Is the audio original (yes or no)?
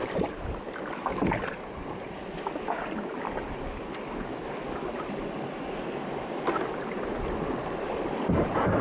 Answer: yes